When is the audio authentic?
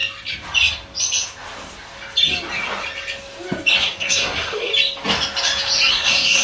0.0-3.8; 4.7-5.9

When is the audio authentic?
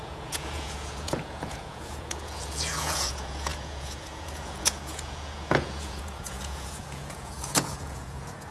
none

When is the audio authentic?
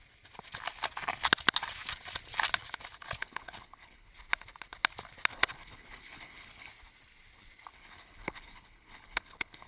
0.0-3.2; 4.1-5.3; 6.7-7.7